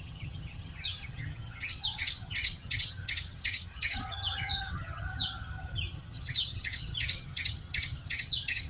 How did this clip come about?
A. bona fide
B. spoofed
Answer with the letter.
B